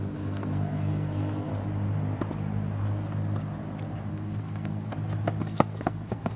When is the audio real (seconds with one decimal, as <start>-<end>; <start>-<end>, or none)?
1.5-4.1; 4.9-5.4